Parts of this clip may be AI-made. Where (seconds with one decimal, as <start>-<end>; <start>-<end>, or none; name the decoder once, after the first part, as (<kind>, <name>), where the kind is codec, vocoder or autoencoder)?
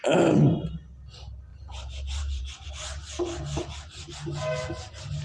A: 1.5-2.7 (vocoder, BigVGAN v2)